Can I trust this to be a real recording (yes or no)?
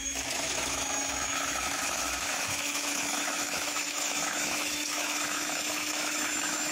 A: no